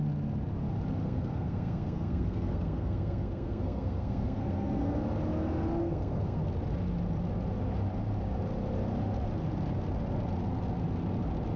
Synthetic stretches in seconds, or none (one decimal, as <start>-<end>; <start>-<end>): 1.0-5.0; 5.8-6.4